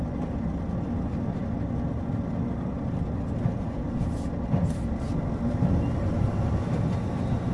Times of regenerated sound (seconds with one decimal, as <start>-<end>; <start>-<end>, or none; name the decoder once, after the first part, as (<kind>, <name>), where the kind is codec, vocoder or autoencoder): none